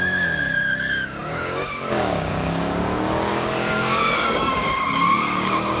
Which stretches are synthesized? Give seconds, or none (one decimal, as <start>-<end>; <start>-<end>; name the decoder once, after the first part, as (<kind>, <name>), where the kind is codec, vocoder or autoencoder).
0.0-5.8 (codec, DAC)

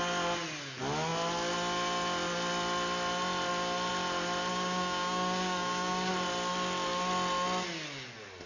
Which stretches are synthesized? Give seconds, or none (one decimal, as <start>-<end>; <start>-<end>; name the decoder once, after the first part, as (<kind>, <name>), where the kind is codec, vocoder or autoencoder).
4.5-6.1 (codec, DAC)